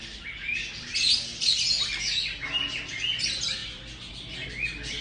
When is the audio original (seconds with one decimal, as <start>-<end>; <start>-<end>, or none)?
0.0-5.0